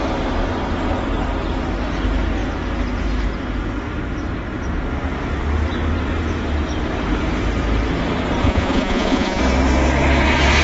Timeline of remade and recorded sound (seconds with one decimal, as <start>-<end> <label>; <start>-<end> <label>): 0.0-8.4 recorded; 8.4-9.4 remade; 9.4-10.6 recorded